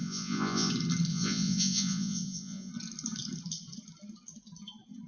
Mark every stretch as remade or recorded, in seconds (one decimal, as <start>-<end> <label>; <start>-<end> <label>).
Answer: 0.0-0.7 remade; 0.7-1.1 recorded; 1.1-2.7 remade; 2.7-5.1 recorded